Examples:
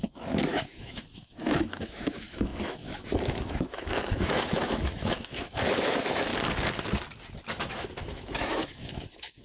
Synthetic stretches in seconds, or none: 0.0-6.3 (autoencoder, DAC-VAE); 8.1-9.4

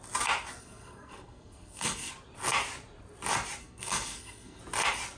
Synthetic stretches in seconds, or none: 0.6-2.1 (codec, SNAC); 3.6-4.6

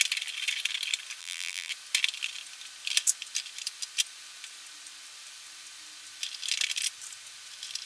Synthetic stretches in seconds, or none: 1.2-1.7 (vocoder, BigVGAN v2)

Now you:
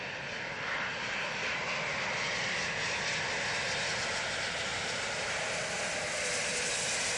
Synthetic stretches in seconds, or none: none

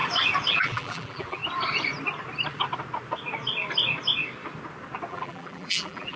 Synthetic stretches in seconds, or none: 0.5-1.4 (vocoder, BigVGAN v2); 5.1-6.2